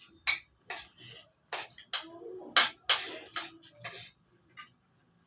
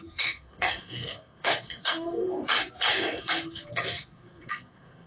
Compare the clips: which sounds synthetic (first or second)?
second